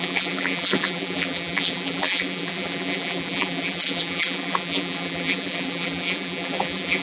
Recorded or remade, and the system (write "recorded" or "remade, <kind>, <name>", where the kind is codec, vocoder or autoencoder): remade, vocoder, BigVGAN v2